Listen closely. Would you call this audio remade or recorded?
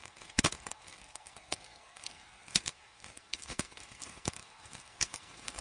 remade